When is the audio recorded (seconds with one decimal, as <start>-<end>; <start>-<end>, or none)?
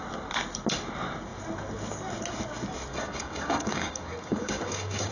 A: 0.0-2.9